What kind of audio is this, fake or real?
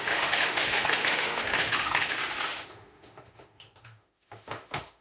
fake